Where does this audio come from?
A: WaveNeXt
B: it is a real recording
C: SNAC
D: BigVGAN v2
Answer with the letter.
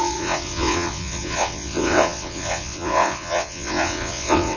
A